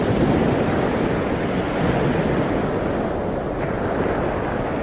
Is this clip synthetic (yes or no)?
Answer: no